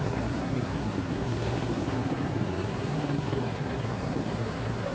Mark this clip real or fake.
fake